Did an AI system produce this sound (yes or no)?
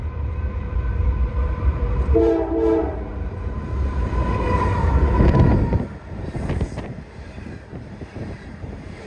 yes